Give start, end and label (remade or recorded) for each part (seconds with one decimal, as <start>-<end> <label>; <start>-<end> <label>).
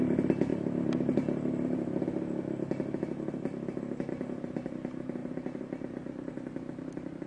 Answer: 0.0-7.3 recorded